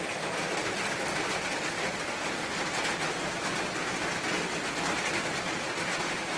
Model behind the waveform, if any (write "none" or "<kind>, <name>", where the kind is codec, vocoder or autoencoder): none